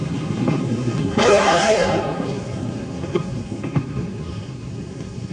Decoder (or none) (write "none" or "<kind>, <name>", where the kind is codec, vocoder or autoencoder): codec, SNAC